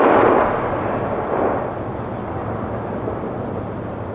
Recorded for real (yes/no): yes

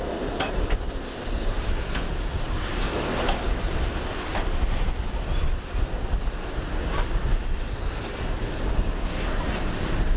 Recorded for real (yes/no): yes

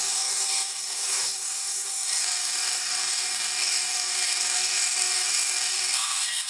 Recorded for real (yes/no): no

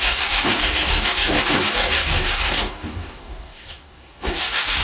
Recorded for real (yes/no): no